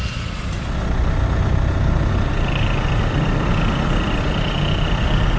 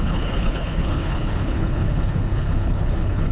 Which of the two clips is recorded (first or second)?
first